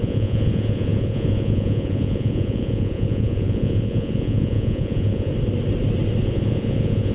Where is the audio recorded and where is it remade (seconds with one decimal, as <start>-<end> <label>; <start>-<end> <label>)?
0.0-5.3 remade; 5.3-6.2 recorded; 6.2-7.1 remade